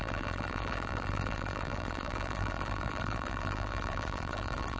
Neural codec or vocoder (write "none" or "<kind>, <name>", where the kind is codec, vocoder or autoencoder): vocoder, BigVGAN v2